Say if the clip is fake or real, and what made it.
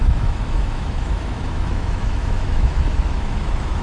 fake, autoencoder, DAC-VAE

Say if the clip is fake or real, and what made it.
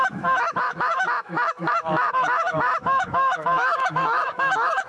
fake, autoencoder, DAC-VAE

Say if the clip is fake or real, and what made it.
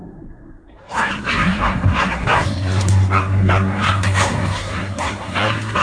fake, codec, SNAC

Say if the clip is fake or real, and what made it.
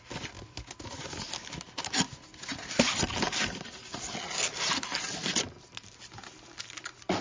real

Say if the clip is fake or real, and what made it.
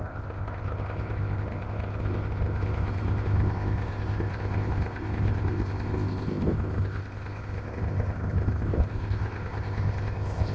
fake, codec, ZipCodec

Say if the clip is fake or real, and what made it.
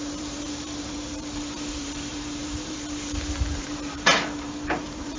fake, vocoder, BigVGAN v2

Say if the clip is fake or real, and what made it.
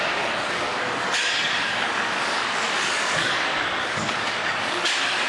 fake, codec, DAC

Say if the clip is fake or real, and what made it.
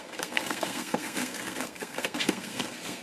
fake, codec, SNAC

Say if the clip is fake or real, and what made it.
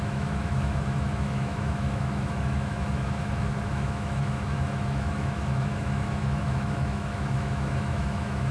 fake, autoencoder, DAC-VAE